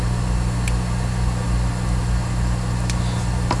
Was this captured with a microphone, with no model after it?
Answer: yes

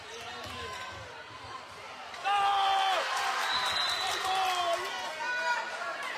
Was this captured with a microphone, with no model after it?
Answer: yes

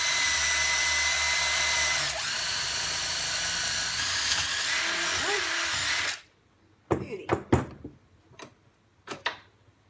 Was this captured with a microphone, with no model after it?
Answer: yes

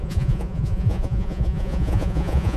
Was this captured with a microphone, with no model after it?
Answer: no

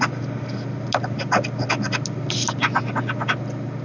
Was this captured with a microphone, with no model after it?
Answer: yes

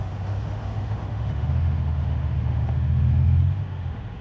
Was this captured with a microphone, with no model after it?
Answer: no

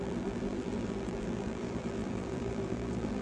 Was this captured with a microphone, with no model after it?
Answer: no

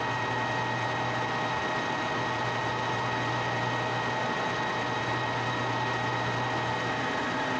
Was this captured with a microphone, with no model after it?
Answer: yes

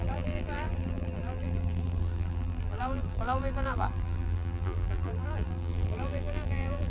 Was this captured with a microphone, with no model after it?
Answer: no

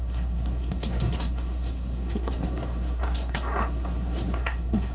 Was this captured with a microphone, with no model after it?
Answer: no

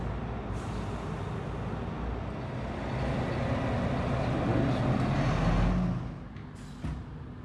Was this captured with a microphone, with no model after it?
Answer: yes